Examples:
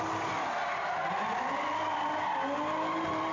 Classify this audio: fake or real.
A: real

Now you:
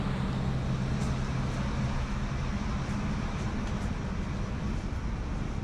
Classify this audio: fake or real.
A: real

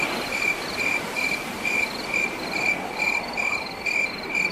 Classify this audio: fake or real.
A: fake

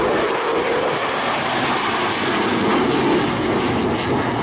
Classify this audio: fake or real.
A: real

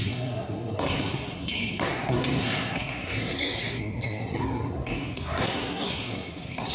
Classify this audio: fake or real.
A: fake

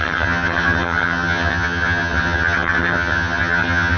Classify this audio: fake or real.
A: fake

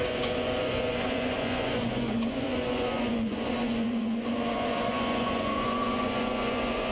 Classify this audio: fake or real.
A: fake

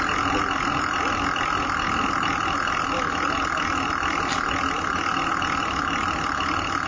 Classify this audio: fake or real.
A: real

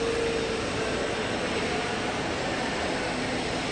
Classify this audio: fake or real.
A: real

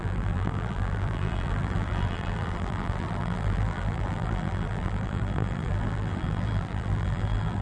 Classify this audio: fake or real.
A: fake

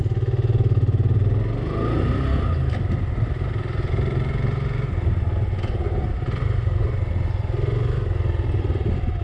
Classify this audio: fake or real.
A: real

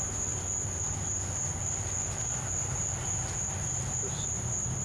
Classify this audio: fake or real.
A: real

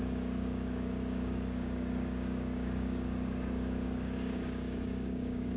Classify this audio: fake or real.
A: fake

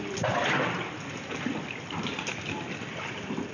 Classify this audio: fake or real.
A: real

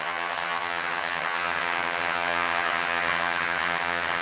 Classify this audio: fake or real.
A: fake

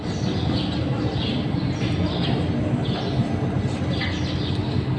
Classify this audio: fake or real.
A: real